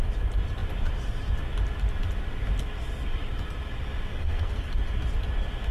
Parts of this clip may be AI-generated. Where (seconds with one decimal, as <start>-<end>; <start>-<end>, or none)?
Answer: 4.1-4.7